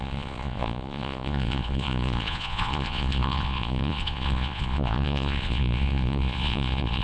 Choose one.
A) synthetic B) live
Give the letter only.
A